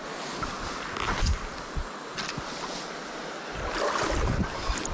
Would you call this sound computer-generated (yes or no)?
no